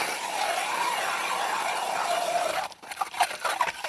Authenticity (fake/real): real